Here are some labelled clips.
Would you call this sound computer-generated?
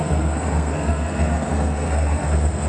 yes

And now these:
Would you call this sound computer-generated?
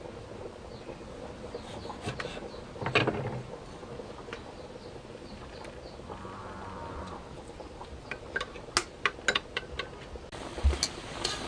no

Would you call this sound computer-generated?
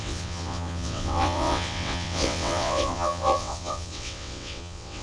yes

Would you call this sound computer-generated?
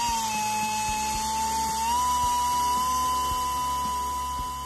no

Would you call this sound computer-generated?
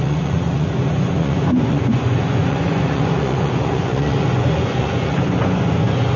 yes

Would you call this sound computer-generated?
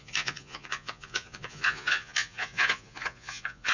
yes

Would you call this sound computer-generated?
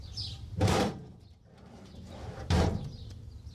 yes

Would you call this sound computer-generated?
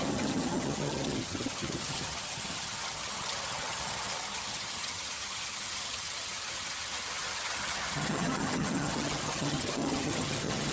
yes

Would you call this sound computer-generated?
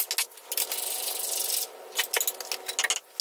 no